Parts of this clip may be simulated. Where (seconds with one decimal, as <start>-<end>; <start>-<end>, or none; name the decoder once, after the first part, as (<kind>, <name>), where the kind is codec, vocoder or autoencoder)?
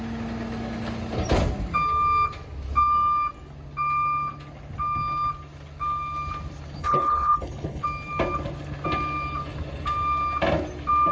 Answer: 6.8-7.8 (codec, HILCodec)